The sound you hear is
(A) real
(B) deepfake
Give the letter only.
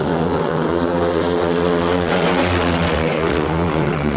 B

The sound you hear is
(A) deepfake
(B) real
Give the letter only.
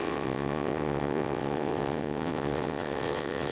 A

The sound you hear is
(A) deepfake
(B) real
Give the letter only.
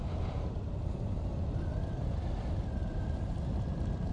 B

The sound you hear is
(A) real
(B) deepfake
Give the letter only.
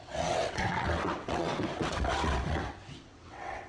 B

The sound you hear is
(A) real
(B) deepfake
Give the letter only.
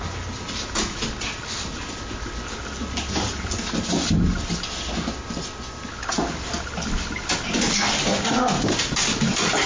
A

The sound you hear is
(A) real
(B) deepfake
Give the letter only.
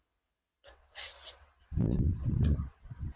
B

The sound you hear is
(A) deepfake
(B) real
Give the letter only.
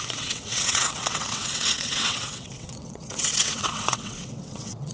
A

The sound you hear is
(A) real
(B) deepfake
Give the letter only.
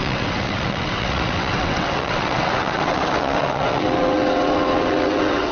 B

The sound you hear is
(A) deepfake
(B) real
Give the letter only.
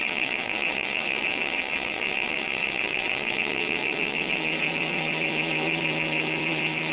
A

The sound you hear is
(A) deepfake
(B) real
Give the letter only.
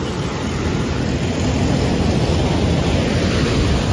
B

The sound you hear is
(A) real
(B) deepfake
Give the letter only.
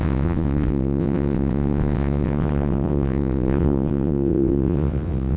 B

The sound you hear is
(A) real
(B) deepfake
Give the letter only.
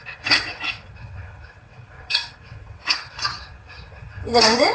B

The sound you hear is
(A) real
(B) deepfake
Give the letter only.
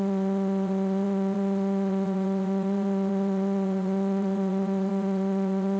B